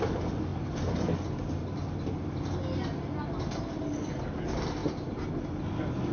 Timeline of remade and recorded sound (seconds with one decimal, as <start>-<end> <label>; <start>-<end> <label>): 0.0-0.5 remade; 0.5-4.2 recorded; 4.2-4.8 remade; 4.8-6.1 recorded